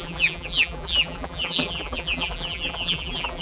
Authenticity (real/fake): fake